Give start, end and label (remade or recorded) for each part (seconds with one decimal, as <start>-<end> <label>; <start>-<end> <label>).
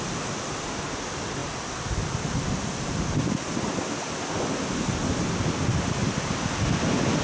0.0-7.2 recorded